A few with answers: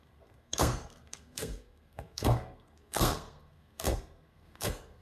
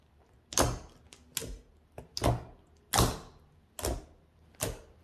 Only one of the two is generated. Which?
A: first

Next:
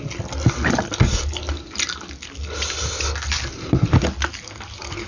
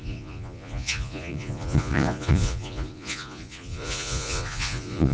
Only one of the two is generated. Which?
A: second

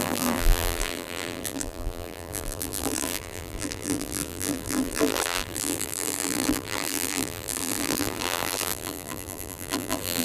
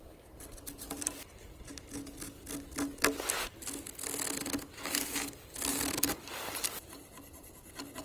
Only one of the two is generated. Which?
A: first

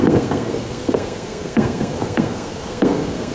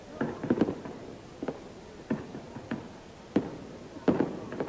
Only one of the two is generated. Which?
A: first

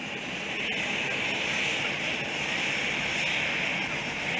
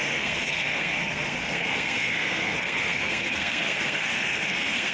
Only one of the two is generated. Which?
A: second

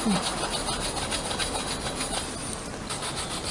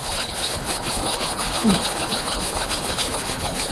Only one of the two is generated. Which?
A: second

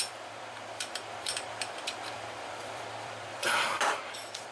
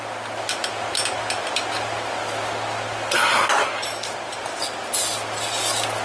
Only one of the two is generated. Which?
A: first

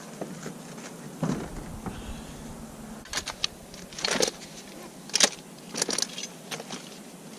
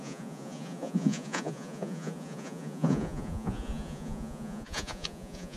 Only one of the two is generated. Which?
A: second